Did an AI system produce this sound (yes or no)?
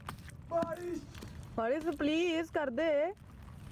no